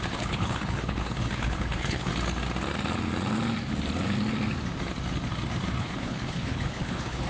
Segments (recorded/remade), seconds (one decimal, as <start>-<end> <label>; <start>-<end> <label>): 0.0-2.1 remade; 2.1-5.8 recorded; 5.8-7.3 remade